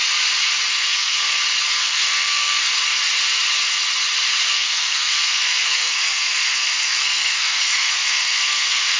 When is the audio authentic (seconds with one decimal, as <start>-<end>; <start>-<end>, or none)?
0.0-0.7; 1.4-1.8; 2.7-4.5